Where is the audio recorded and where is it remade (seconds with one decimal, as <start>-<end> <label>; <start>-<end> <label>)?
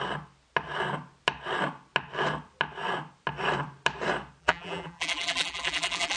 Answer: 0.0-4.4 recorded; 4.4-6.2 remade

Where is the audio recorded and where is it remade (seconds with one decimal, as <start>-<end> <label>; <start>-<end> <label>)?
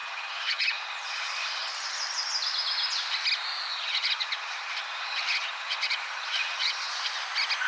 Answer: 0.0-1.7 remade; 1.7-3.7 recorded; 3.7-6.9 remade; 6.9-7.7 recorded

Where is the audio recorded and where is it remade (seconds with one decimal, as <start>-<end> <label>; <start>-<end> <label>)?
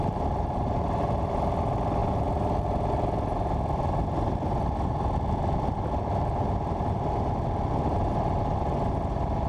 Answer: 0.0-9.5 recorded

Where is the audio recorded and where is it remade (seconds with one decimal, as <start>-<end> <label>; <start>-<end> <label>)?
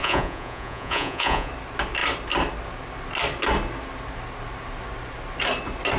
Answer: 0.0-1.5 remade; 1.5-6.0 recorded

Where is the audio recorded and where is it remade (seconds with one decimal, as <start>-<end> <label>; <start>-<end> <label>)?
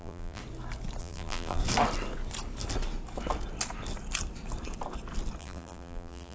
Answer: 0.0-0.4 remade; 0.4-1.0 recorded; 1.0-1.6 remade; 1.6-5.4 recorded; 5.4-6.3 remade